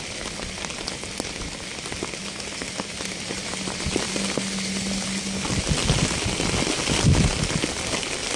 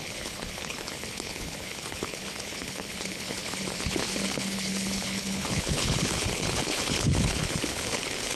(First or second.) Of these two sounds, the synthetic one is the second